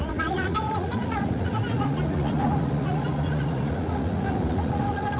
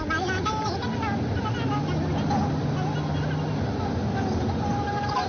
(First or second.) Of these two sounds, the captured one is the second